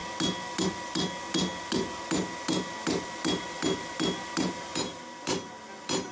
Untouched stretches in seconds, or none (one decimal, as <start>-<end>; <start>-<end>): 0.0-6.1